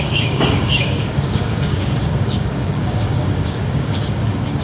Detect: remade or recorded remade